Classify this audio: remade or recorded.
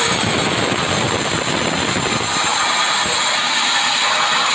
recorded